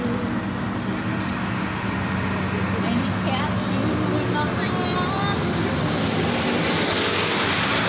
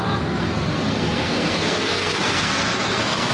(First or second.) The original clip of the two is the first